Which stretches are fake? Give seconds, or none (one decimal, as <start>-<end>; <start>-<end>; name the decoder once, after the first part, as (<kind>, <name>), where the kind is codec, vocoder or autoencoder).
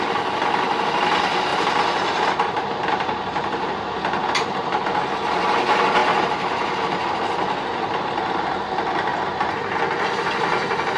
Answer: 1.5-4.8 (vocoder, BigVGAN v2); 6.0-7.1; 9.1-9.8